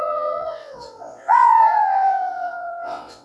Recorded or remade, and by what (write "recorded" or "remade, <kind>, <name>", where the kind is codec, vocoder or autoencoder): remade, vocoder, WaveNeXt